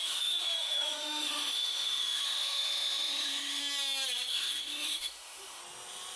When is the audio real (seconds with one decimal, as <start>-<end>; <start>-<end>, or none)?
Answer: 3.6-4.3; 5.6-6.2